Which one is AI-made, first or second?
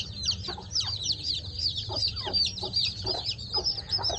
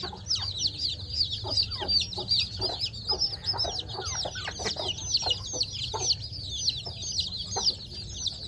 first